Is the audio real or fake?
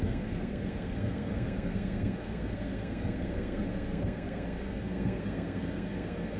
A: fake